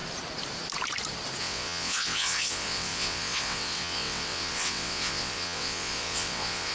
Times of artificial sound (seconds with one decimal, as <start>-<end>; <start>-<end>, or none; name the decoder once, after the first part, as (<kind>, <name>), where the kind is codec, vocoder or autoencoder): 1.4-6.7 (vocoder, WaveNeXt)